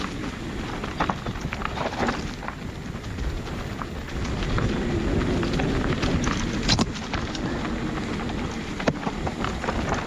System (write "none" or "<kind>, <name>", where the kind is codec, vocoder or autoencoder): none